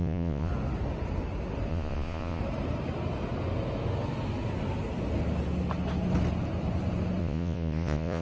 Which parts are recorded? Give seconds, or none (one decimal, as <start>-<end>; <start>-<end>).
0.5-1.7; 2.4-7.2